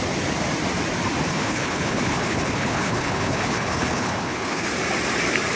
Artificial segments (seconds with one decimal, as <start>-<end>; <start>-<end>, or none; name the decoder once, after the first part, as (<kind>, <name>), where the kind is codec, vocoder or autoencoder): 1.3-4.7 (codec, HILCodec)